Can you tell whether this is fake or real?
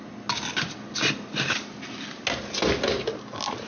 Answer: real